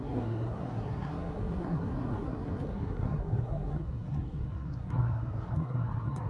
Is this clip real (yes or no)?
no